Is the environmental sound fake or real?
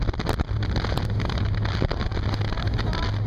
real